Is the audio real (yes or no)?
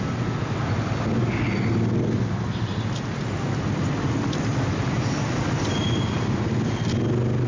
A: yes